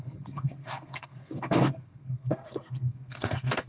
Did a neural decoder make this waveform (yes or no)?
yes